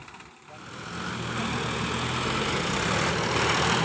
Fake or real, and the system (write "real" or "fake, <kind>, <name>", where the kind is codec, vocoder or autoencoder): real